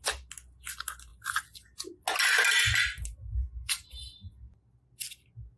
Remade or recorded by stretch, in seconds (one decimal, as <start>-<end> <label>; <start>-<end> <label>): 0.0-5.6 recorded